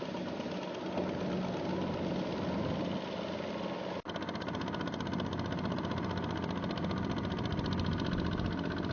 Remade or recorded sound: recorded